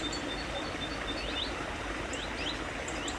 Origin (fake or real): real